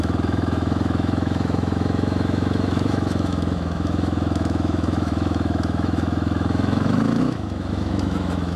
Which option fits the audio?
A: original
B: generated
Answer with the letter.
B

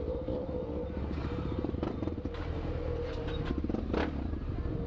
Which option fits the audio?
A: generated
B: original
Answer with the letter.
B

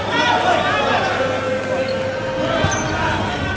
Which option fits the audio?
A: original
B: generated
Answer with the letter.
A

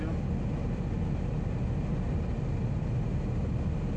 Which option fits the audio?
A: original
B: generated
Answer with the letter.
A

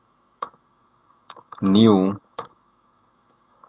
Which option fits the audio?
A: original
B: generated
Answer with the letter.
B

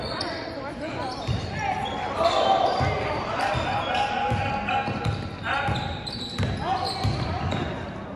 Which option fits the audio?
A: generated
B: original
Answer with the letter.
B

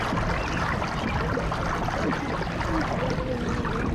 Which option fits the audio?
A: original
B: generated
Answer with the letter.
A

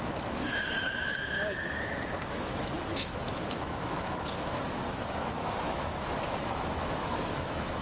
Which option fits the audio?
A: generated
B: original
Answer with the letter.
A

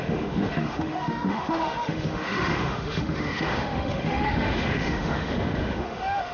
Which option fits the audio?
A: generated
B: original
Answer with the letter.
A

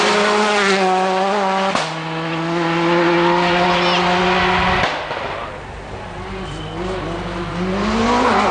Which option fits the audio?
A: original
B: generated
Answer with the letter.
A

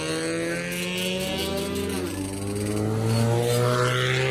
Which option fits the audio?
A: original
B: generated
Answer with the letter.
A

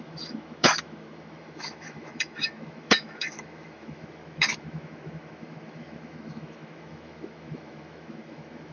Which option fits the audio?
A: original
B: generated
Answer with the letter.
B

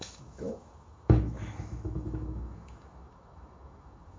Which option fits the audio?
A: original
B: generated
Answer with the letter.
B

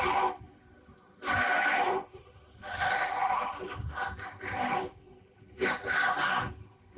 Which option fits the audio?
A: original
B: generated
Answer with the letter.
A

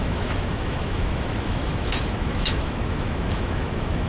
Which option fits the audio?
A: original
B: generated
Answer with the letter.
B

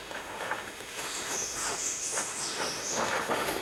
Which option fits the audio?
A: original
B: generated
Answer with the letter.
B